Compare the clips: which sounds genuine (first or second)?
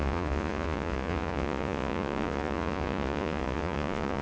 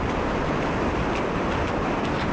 second